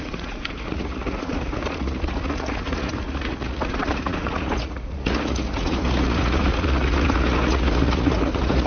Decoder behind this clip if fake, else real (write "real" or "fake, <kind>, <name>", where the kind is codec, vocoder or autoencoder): fake, vocoder, Vocos